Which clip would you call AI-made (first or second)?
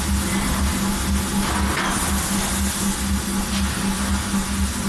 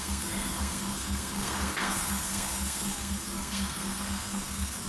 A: second